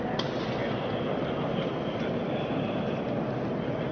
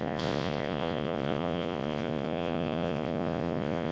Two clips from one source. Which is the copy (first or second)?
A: second